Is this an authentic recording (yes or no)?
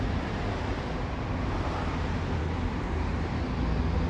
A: yes